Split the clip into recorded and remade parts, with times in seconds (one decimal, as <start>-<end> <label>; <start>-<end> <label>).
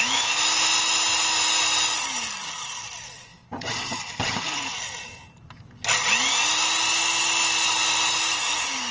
0.0-8.9 recorded